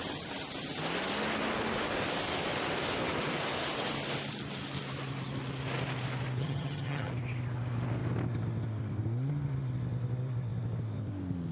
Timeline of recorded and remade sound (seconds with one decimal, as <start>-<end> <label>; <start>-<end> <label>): 0.0-6.4 recorded; 6.4-7.1 remade; 7.1-11.5 recorded